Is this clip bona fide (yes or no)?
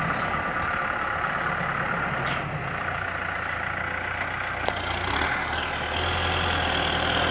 yes